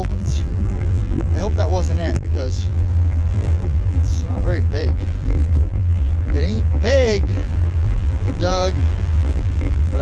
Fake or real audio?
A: fake